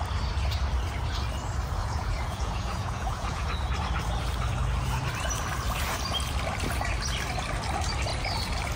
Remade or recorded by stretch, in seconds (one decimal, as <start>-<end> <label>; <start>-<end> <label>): 0.0-1.8 recorded; 1.8-3.5 remade; 3.5-8.8 recorded